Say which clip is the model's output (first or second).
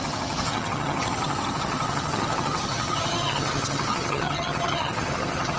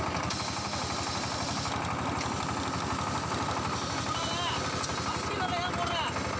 first